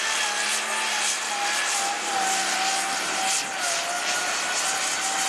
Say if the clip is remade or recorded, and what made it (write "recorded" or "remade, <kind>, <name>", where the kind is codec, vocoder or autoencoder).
recorded